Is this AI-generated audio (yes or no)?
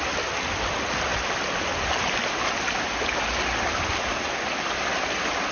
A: no